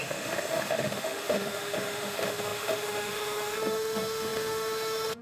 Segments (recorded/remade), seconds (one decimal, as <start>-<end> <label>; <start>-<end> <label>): 0.0-5.2 remade